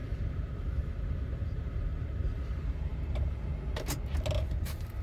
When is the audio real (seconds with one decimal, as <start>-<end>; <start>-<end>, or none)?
3.5-4.4